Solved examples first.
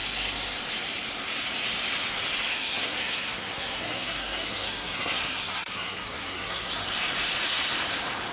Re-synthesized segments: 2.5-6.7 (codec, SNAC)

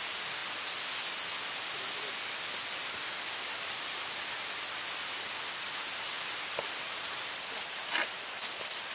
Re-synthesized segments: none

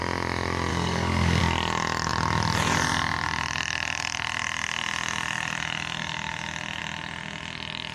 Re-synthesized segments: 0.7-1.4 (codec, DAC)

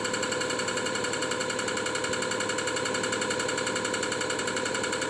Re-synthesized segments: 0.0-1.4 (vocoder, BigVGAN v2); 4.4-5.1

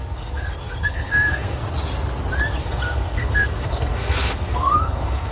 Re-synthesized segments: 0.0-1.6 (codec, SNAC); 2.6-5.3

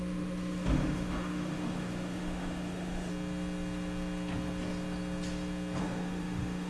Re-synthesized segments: 0.0-3.1 (autoencoder, DAC-VAE); 5.8-6.7

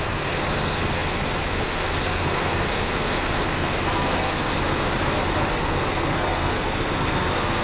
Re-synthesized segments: 0.0-4.5 (codec, SNAC); 5.5-7.6

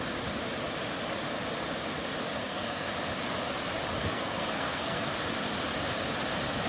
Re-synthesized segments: 2.4-2.9 (codec, SNAC); 4.0-5.1